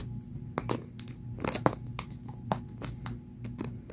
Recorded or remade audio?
recorded